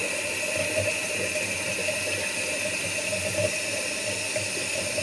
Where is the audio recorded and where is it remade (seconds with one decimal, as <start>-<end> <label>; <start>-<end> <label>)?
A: 0.0-1.0 recorded; 1.0-4.0 remade; 4.0-5.0 recorded